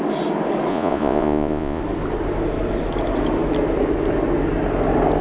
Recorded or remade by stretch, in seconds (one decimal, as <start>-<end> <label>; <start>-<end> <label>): 0.0-0.7 recorded; 0.7-1.8 remade; 1.8-5.2 recorded